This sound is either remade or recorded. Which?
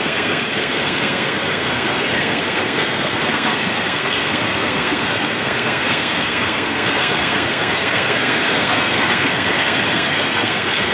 remade